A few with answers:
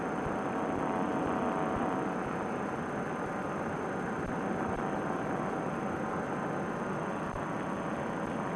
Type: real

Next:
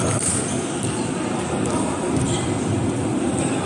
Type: real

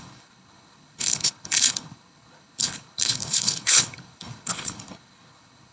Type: fake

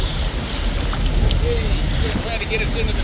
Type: real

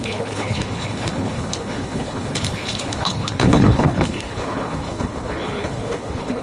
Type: fake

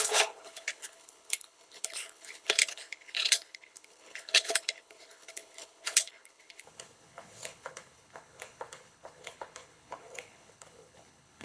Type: fake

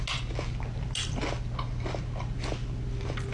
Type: real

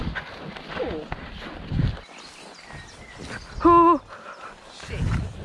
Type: real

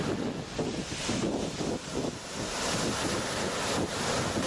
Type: real